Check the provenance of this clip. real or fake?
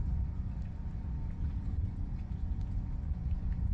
fake